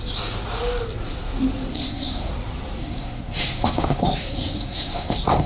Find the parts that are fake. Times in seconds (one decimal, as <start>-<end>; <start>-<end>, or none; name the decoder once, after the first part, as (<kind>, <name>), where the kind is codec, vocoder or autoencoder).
1.7-2.3 (codec, SNAC); 2.8-5.5

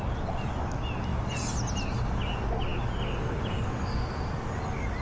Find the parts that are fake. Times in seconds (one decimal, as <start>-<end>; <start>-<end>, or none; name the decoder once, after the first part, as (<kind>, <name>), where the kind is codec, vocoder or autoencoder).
none

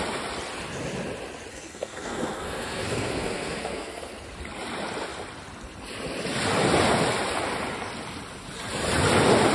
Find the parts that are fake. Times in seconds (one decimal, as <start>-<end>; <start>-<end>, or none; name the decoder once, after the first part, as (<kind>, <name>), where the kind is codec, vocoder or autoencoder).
1.5-4.1 (codec, SNAC)

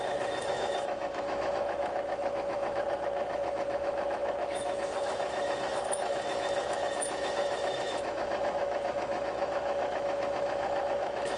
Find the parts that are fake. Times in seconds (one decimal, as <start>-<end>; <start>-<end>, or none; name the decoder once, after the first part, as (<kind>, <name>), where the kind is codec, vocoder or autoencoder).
0.0-11.4 (autoencoder, DAC-VAE)